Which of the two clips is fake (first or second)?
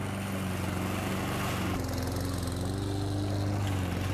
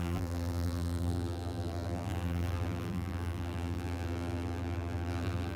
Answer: second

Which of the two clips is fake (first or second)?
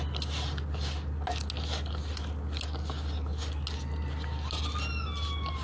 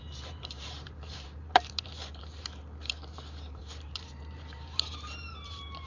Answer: second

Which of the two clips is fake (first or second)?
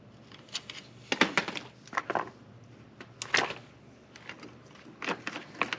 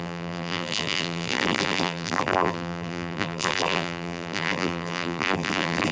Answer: second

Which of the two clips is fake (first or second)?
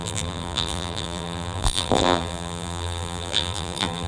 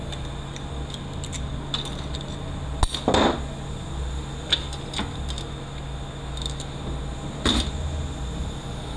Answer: first